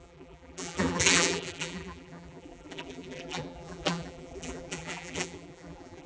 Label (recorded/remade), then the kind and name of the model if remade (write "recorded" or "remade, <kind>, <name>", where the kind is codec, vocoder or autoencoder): remade, vocoder, BigVGAN v2